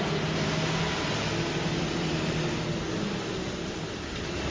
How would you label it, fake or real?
real